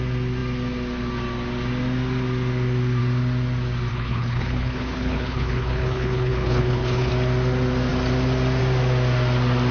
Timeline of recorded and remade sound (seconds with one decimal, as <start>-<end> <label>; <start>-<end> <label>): 0.0-3.9 recorded; 3.9-7.1 remade; 7.1-9.7 recorded